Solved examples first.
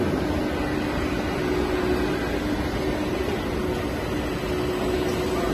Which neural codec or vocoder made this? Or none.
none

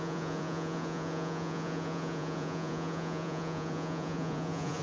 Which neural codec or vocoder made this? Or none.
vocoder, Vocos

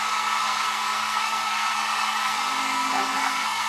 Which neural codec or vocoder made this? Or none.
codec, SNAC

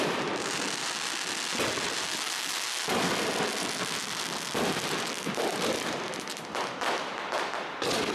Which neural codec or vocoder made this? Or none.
none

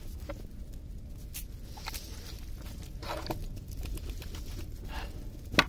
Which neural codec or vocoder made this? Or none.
none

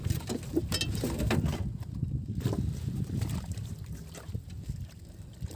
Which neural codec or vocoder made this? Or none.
none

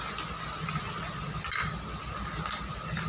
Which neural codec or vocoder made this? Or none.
none